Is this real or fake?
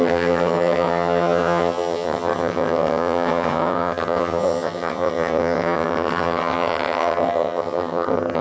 fake